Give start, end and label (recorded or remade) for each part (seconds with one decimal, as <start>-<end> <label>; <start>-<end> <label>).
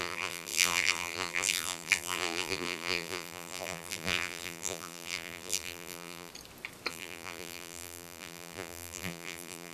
0.0-6.3 remade; 6.3-6.9 recorded; 6.9-9.7 remade